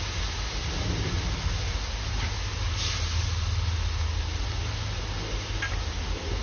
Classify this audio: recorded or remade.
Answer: recorded